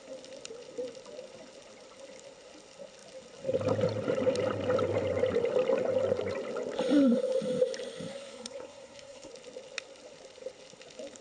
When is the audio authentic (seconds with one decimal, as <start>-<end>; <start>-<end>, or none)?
0.0-8.1; 9.3-11.2